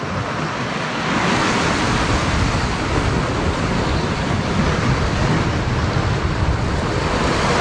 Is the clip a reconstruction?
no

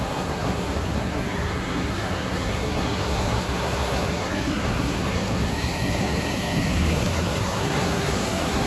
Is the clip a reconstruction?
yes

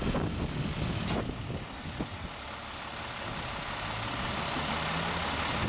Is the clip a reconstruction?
no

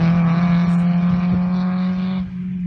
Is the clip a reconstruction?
no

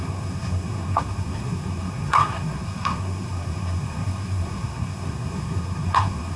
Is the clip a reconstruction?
yes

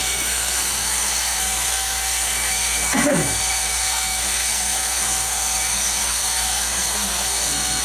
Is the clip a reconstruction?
yes